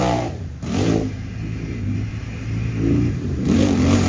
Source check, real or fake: fake